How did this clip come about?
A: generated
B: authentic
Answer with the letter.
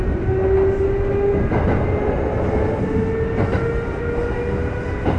B